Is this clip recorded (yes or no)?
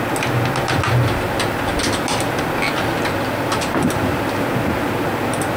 yes